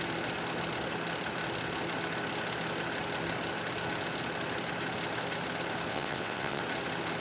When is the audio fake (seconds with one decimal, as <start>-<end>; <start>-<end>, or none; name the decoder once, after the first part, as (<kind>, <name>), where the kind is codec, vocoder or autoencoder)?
5.9-6.6 (vocoder, WaveNeXt)